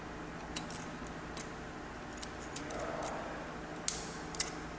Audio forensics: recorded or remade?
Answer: recorded